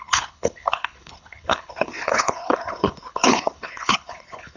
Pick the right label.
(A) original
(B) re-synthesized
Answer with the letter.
B